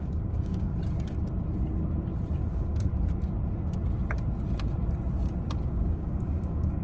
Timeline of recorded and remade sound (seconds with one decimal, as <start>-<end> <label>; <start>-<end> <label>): 0.0-0.7 remade; 0.7-2.5 recorded; 2.5-2.9 remade; 2.9-5.7 recorded; 5.7-6.8 remade